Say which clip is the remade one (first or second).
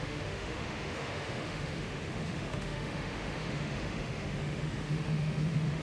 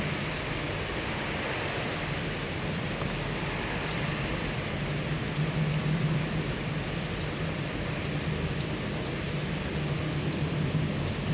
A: first